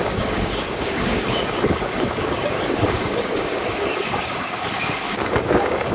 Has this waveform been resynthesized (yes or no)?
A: yes